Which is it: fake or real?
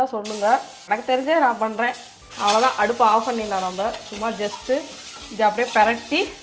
real